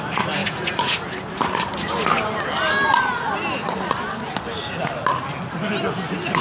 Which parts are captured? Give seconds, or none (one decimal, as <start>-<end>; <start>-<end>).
0.0-0.4; 1.0-6.4